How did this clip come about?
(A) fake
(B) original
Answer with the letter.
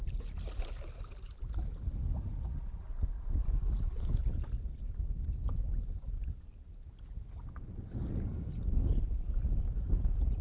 B